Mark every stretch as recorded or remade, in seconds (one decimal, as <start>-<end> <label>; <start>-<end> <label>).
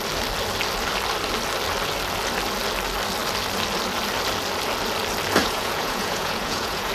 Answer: 0.0-5.4 recorded; 5.4-6.9 remade